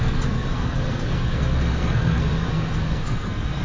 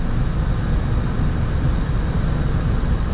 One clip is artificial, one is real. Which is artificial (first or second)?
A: first